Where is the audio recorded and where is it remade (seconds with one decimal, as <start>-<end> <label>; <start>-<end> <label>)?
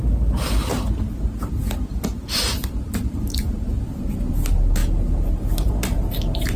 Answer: 0.0-1.4 recorded; 1.4-4.3 remade; 4.3-6.6 recorded